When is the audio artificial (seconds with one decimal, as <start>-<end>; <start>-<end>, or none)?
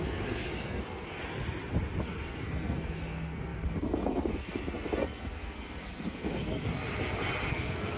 0.0-1.2; 2.0-6.7; 7.5-8.0